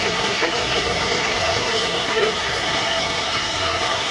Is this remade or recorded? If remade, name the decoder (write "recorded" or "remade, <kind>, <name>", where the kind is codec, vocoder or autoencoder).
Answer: remade, codec, SNAC